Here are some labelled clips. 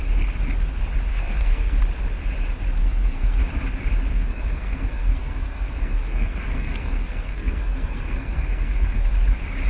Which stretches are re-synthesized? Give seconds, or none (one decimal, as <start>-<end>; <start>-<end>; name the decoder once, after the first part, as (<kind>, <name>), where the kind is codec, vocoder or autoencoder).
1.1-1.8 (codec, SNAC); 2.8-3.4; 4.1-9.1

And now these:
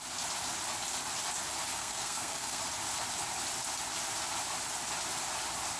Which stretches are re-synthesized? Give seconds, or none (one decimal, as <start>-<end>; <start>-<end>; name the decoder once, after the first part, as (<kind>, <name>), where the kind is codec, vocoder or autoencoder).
1.8-2.6 (codec, SNAC)

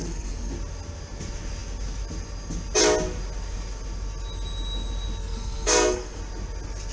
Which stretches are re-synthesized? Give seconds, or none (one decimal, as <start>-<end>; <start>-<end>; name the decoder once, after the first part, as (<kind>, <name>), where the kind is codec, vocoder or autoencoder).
0.0-0.5 (codec, SNAC); 5.2-6.2

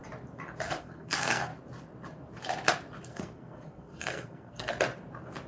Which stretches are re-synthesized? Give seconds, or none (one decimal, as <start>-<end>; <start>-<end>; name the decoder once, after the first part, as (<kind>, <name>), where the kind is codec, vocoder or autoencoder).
0.8-1.5 (codec, SNAC); 3.0-4.7

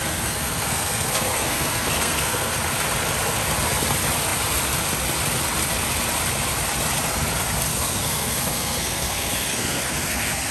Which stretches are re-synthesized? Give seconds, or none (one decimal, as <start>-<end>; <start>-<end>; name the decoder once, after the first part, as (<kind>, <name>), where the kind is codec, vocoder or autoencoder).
0.0-2.5 (codec, SNAC); 7.7-10.5

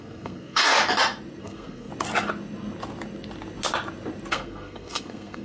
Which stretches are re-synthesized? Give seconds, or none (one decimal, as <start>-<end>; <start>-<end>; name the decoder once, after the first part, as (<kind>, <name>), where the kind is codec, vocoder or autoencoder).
0.0-0.6 (codec, SNAC); 1.4-1.9; 4.3-5.4